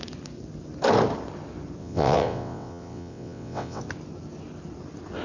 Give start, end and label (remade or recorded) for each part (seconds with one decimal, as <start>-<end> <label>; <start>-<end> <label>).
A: 0.0-1.8 recorded; 1.8-3.8 remade; 3.8-5.2 recorded